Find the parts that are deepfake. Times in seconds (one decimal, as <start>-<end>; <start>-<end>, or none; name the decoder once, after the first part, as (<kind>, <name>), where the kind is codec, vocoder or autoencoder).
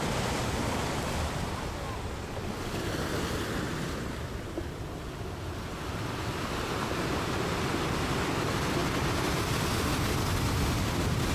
none